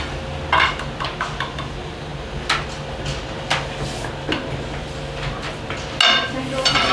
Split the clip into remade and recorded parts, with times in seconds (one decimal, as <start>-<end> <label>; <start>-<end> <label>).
0.0-6.9 recorded